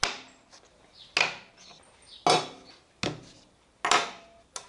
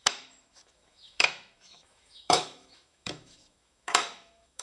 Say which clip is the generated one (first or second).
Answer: second